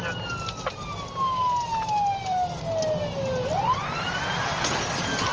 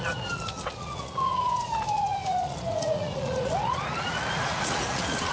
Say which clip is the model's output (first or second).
second